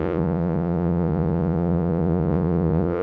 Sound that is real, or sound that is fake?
fake